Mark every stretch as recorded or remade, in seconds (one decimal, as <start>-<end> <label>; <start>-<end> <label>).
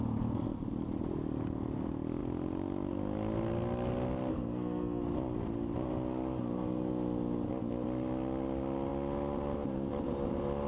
0.0-4.3 recorded; 4.3-5.0 remade; 5.0-10.7 recorded